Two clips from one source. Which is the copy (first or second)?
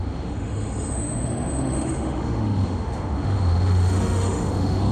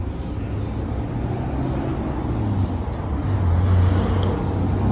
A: first